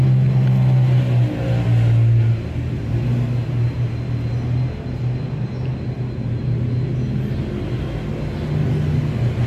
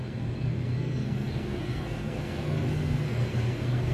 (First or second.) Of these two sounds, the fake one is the second